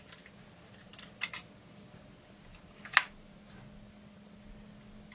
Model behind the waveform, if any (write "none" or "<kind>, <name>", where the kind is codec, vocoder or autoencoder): none